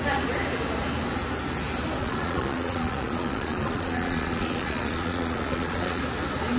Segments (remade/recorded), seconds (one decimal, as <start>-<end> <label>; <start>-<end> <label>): 0.0-2.0 recorded; 2.0-6.0 remade; 6.0-6.6 recorded